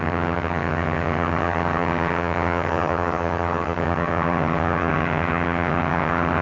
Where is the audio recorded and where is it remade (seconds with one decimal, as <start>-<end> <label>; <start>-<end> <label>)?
0.0-6.4 remade